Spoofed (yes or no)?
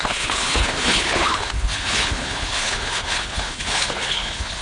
yes